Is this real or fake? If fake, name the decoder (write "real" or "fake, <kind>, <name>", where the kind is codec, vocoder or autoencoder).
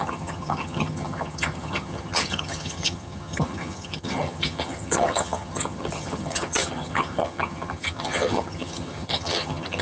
fake, vocoder, HiFi-GAN